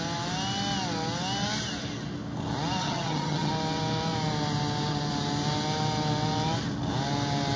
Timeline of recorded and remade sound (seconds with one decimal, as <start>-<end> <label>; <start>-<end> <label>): 0.0-2.8 recorded; 2.8-3.5 remade; 3.5-7.6 recorded